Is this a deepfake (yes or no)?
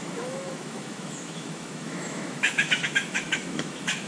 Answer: yes